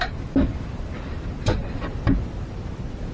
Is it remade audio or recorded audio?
recorded